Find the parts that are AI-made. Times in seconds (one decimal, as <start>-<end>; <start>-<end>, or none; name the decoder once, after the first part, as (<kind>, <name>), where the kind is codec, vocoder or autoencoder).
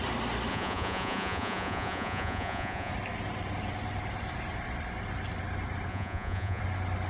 0.5-2.9 (vocoder, Vocos); 5.9-6.6